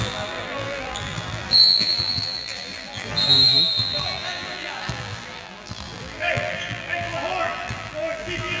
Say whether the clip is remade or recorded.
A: remade